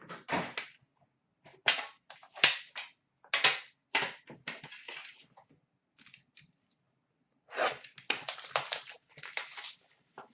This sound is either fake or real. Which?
real